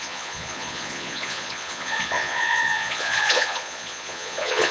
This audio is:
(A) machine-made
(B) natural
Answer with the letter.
A